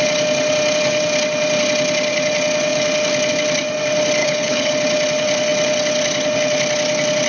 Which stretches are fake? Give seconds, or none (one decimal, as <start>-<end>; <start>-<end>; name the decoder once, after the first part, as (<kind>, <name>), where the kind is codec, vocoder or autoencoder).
4.2-4.7 (codec, HILCodec)

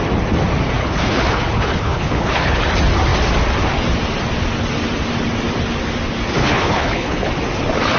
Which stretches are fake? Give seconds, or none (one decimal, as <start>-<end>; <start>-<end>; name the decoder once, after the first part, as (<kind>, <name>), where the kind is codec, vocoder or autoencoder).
0.8-2.6 (codec, HILCodec); 6.4-7.3

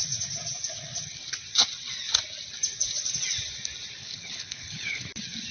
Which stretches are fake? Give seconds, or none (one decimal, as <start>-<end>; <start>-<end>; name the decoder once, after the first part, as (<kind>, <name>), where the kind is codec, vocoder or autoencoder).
4.0-5.1 (codec, HILCodec)

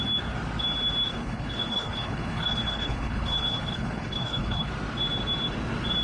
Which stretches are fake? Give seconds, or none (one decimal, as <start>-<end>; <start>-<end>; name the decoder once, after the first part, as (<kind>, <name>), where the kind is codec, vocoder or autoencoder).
1.1-4.7 (codec, HILCodec)